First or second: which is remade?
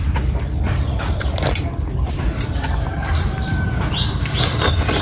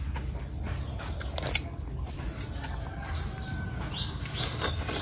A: first